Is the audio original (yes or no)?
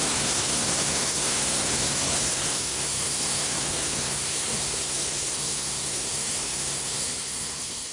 no